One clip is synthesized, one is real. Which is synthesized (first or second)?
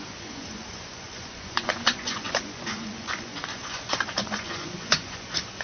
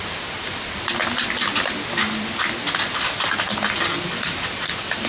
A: first